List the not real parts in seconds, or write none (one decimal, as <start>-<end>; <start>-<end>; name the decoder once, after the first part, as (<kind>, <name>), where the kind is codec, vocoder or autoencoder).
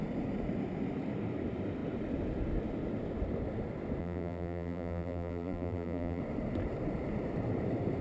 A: 4.0-6.2 (vocoder, BigVGAN v2)